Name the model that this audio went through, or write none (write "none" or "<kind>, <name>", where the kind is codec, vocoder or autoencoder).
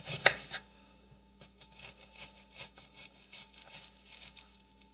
codec, DAC